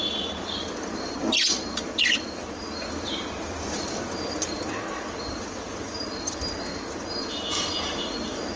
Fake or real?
fake